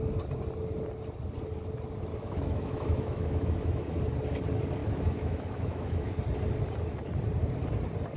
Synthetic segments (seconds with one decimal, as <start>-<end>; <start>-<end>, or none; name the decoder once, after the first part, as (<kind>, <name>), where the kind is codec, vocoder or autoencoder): 2.1-4.0 (autoencoder, DAC-VAE); 4.8-6.1